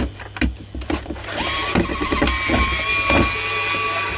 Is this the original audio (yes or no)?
yes